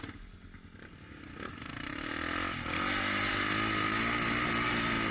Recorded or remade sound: recorded